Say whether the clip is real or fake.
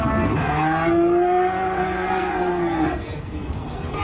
fake